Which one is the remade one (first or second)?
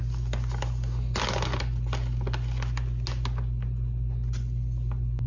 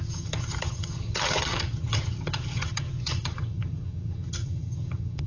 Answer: second